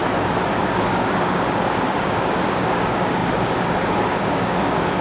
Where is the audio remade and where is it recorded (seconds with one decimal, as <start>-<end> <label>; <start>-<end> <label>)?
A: 0.0-0.6 recorded; 0.6-5.0 remade